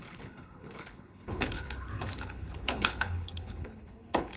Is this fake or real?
fake